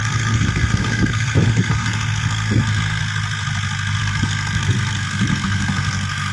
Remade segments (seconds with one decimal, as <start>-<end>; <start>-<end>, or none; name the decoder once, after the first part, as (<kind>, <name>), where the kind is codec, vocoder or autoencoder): 0.0-3.0 (codec, SNAC); 4.0-6.3